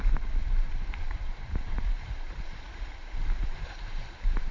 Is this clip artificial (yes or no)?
yes